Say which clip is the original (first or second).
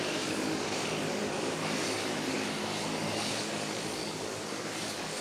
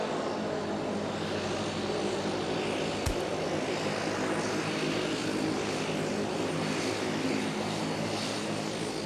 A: second